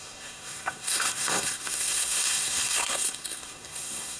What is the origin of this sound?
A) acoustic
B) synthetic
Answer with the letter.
B